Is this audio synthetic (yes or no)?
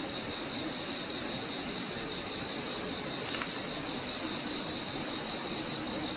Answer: no